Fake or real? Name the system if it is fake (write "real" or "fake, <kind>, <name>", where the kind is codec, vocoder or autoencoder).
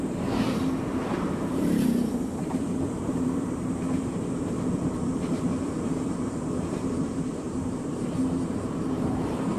fake, vocoder, BigVGAN v2